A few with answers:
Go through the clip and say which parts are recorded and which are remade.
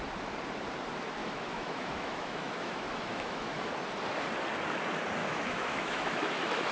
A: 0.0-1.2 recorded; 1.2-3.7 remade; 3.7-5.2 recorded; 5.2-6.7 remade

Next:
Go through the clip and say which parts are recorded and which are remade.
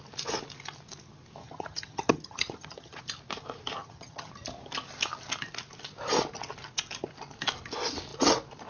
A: 0.0-1.4 recorded; 1.4-3.0 remade; 3.0-3.8 recorded; 3.8-4.3 remade; 4.3-8.7 recorded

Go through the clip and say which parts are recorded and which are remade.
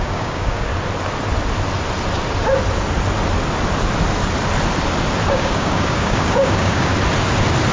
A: 0.0-0.7 remade; 0.7-5.3 recorded; 5.3-6.9 remade; 6.9-7.7 recorded